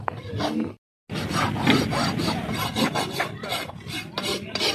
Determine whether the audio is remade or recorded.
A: recorded